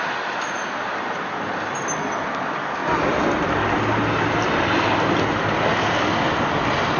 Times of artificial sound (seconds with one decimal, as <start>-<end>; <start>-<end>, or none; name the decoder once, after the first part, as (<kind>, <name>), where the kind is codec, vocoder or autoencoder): none